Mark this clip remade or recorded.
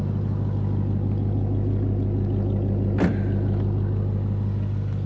recorded